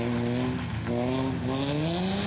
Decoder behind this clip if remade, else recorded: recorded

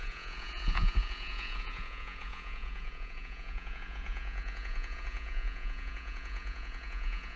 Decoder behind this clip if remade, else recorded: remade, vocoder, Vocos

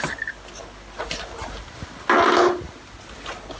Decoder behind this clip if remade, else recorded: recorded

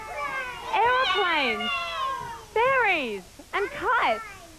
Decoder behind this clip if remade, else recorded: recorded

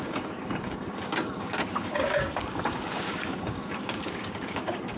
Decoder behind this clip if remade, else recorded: remade, codec, DAC